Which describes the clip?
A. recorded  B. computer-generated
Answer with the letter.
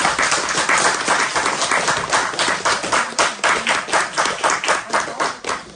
A